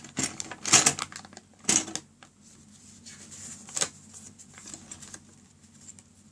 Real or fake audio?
real